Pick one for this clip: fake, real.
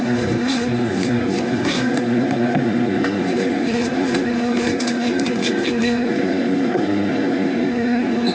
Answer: fake